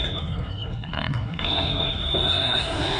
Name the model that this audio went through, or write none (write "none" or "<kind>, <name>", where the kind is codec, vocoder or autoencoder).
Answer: codec, SNAC